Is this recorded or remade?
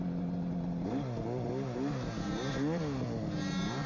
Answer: recorded